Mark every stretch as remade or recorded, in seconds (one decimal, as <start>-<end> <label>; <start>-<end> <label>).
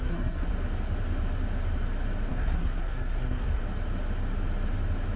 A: 0.0-0.5 remade; 0.5-2.3 recorded; 2.3-3.6 remade; 3.6-5.2 recorded